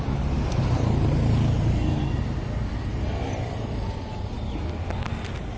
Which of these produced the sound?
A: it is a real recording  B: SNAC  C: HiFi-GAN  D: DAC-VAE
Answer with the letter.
A